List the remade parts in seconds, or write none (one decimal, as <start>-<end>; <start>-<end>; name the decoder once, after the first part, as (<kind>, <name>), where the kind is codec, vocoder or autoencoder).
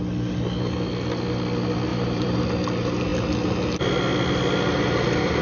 1.9-2.4 (vocoder, BigVGAN v2)